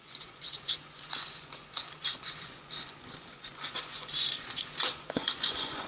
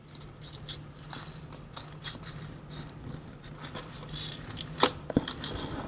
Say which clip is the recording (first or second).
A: second